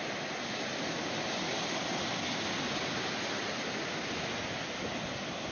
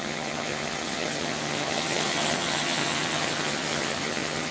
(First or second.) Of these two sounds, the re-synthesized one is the second